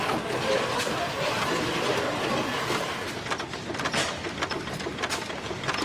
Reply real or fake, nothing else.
real